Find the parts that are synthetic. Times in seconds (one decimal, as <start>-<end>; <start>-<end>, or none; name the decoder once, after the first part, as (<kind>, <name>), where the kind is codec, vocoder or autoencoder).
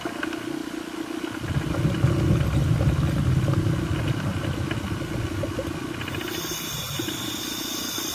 none